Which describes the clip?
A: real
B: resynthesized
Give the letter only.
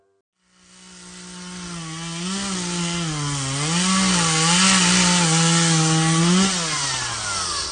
A